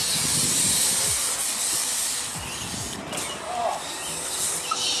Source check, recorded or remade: recorded